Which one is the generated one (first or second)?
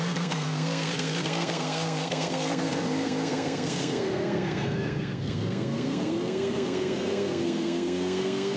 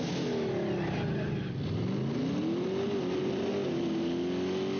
first